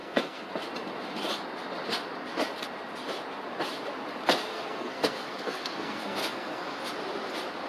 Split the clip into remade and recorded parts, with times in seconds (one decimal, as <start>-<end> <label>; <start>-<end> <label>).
0.0-0.5 remade; 0.5-4.5 recorded; 4.5-6.8 remade; 6.8-7.7 recorded